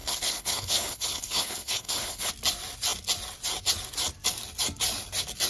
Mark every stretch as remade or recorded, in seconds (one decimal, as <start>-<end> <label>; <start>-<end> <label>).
0.0-2.3 remade; 2.3-5.5 recorded